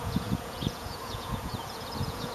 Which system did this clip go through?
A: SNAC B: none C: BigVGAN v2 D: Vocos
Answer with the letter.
D